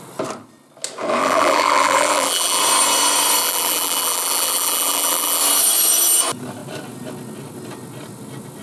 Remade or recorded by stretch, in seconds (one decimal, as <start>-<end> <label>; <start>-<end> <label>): 0.0-1.2 recorded; 1.2-2.6 remade; 2.6-3.4 recorded; 3.4-5.4 remade; 5.4-8.6 recorded